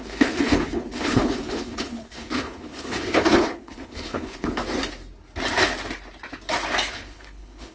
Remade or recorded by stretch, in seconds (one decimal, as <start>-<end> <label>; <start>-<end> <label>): 0.0-4.6 remade; 4.6-6.9 recorded; 6.9-7.7 remade